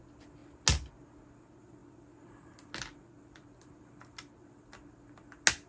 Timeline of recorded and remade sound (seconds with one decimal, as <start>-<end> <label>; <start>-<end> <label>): 0.0-5.7 recorded